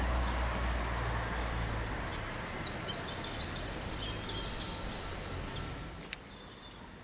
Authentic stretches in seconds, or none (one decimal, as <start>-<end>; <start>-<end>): 0.0-7.0